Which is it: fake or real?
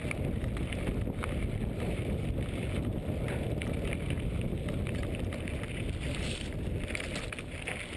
real